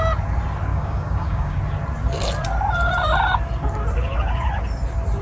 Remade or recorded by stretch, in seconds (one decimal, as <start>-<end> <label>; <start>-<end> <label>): 0.0-0.7 recorded; 0.7-1.6 remade; 1.6-5.2 recorded